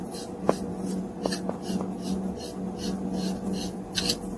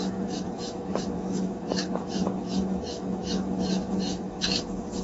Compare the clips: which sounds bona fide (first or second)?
first